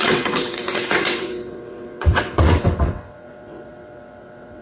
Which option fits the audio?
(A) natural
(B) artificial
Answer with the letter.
B